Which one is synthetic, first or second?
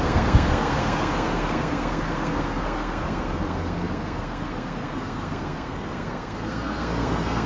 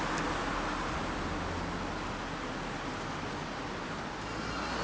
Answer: first